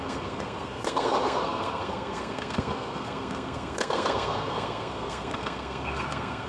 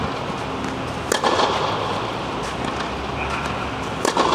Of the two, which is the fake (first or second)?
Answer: first